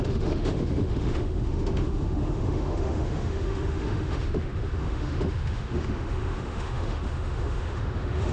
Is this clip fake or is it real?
fake